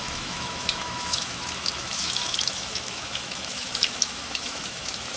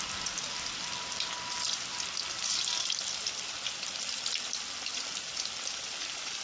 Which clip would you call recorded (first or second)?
second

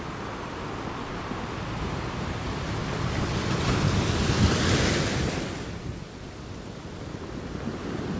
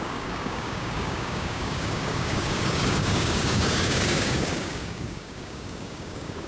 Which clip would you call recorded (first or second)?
first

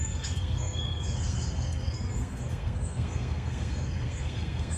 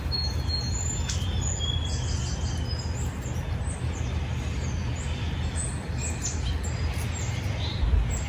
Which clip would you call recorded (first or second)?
second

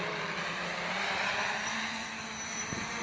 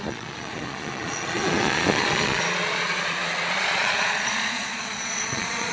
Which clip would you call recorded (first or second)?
first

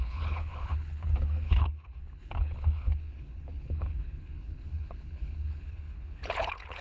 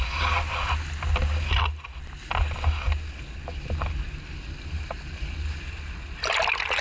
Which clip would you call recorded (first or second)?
second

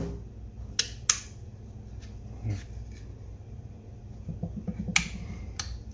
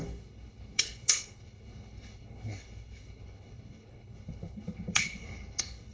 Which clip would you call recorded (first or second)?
first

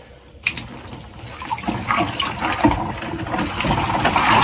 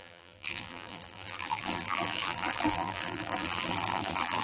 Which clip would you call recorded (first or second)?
first